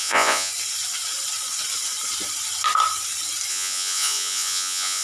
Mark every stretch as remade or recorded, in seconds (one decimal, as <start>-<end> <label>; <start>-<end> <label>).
0.0-0.5 remade; 0.5-3.5 recorded; 3.5-5.0 remade